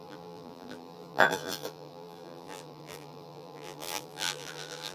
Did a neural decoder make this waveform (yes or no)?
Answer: yes